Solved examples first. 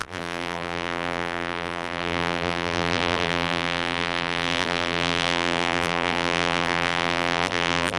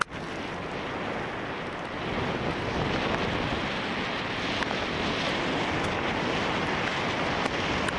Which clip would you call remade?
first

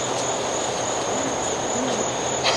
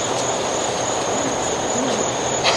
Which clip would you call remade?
second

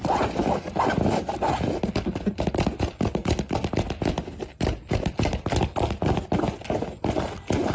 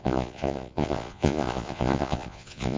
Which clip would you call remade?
second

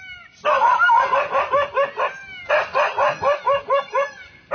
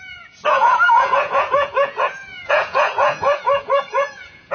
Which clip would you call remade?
second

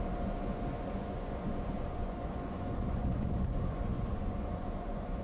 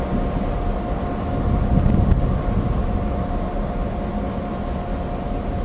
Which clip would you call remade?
first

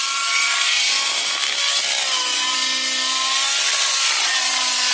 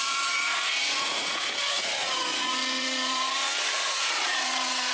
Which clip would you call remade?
second